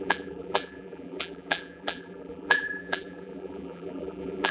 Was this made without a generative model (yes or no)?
no